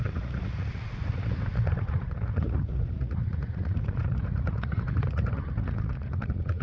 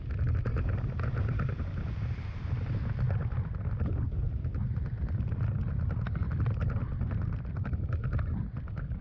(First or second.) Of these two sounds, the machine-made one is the first